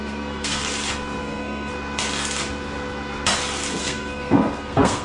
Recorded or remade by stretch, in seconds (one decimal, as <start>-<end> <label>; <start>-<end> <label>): 0.0-0.6 remade; 0.6-1.2 recorded; 1.2-1.7 remade; 1.7-3.8 recorded; 3.8-5.0 remade